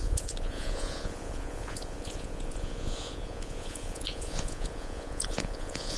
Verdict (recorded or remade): remade